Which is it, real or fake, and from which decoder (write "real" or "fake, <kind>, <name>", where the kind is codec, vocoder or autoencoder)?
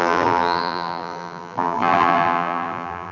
fake, vocoder, BigVGAN v2